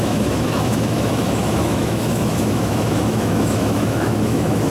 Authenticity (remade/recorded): remade